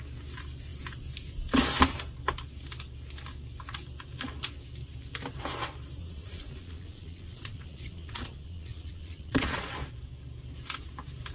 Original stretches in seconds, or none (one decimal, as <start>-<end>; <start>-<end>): 0.0-6.0; 9.7-11.3